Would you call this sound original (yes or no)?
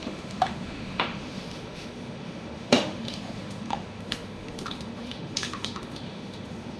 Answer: no